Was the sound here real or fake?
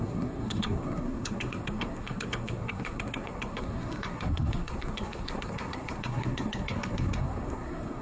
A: fake